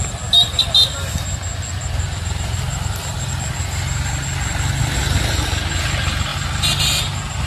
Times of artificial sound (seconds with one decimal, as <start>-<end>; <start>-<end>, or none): none